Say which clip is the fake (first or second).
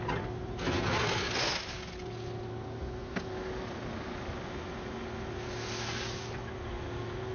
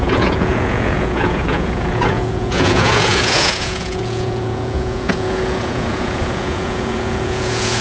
second